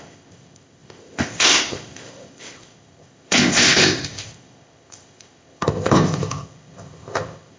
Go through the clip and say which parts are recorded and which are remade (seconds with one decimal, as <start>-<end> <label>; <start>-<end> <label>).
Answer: 0.0-7.6 remade